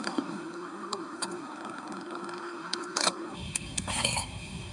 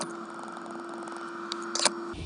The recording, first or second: second